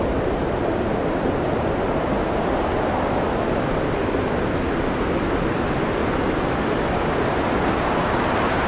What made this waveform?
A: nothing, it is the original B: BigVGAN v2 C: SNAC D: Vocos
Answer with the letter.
A